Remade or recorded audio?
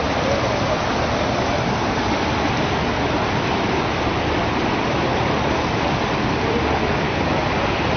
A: recorded